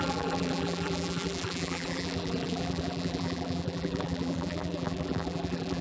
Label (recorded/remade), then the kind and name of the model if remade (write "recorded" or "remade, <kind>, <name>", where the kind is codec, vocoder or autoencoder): remade, vocoder, BigVGAN v2